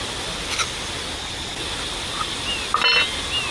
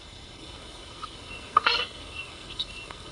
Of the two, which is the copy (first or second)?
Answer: second